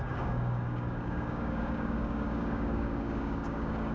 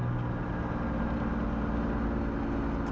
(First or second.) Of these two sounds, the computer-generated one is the first